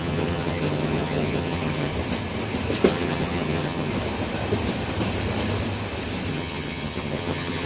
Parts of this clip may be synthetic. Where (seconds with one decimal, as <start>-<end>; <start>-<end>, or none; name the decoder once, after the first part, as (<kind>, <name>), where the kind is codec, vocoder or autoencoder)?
0.0-1.9 (vocoder, HiFi-GAN); 2.9-3.9; 6.3-7.7